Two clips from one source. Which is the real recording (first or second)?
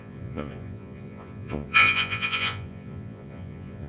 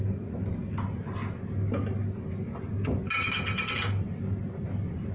second